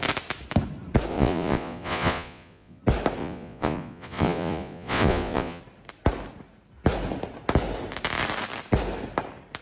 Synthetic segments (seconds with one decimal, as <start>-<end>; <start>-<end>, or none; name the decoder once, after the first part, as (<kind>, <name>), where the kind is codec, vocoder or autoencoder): 1.1-2.8 (vocoder, Vocos); 3.2-5.6